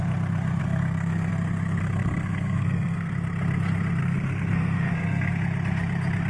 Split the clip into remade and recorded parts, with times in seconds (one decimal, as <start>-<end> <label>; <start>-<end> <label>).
0.0-0.6 recorded; 0.6-1.3 remade; 1.3-1.8 recorded; 1.8-3.1 remade; 3.1-4.0 recorded; 4.0-5.3 remade; 5.3-6.3 recorded